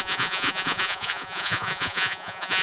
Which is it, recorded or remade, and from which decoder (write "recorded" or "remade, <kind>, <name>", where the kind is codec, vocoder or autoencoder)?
remade, vocoder, Vocos